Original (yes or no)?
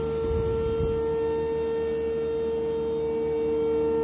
yes